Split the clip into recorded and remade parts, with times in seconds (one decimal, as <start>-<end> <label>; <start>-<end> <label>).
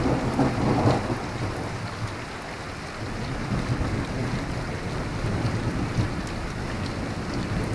0.0-7.7 recorded